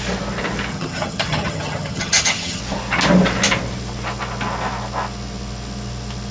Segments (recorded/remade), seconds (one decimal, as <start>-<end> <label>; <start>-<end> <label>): 0.0-0.7 recorded; 0.7-2.6 remade; 2.6-6.3 recorded